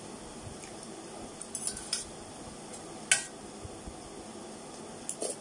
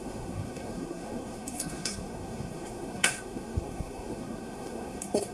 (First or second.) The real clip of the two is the first